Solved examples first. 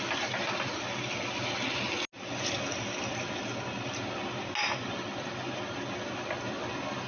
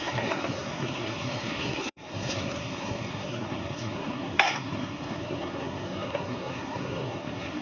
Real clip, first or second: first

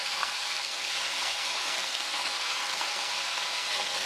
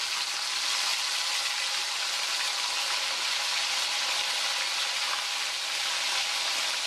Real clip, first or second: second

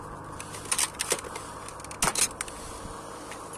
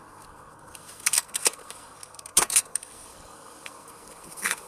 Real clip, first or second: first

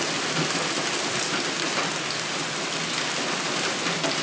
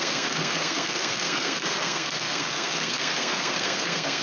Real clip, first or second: first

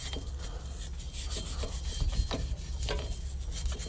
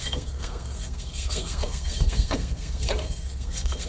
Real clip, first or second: first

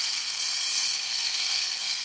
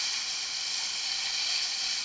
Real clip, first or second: second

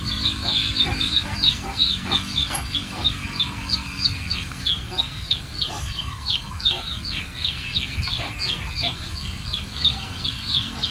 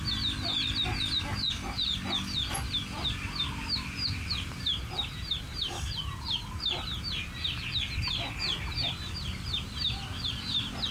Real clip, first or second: second